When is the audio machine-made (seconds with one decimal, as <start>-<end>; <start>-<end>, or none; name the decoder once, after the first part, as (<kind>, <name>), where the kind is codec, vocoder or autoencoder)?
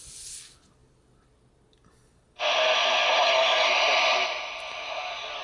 none